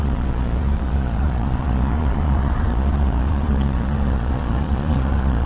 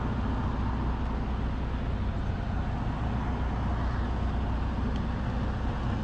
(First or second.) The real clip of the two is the second